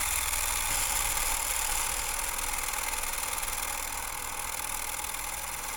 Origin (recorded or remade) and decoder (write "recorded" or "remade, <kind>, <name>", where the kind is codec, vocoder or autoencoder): recorded